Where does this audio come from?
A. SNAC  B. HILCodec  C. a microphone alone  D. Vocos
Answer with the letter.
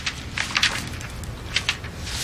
C